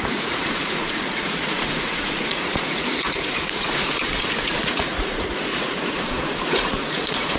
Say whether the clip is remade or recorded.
remade